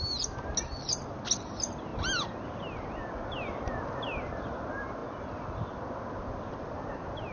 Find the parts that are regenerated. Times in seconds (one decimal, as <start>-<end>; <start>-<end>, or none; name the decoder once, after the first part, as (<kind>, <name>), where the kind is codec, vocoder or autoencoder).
none